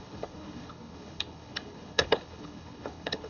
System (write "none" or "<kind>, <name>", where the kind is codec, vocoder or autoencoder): codec, HILCodec